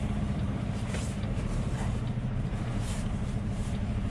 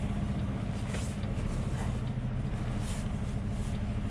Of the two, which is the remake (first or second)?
first